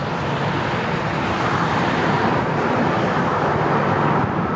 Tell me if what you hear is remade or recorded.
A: recorded